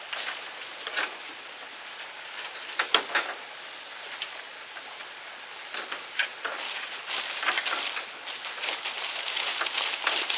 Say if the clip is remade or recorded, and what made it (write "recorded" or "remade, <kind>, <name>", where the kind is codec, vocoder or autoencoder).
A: recorded